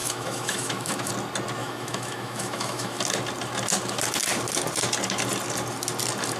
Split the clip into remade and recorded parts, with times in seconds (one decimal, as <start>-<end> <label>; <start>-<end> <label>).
0.0-1.1 remade; 1.1-1.6 recorded; 1.6-3.0 remade; 3.0-6.4 recorded